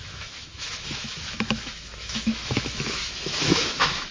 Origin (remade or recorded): remade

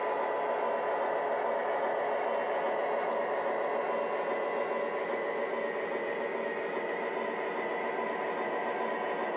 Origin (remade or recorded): recorded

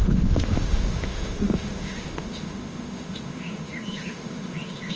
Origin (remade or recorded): remade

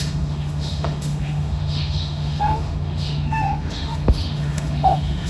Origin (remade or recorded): remade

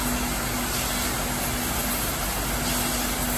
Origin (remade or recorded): recorded